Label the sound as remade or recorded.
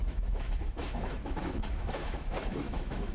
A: remade